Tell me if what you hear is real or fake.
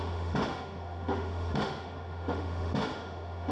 fake